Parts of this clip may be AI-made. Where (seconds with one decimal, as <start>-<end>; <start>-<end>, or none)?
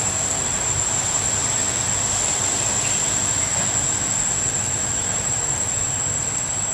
0.0-1.6; 3.1-3.5; 4.7-6.7